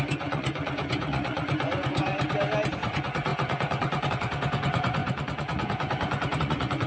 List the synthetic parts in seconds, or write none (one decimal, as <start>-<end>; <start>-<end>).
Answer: 0.0-2.1; 2.7-6.9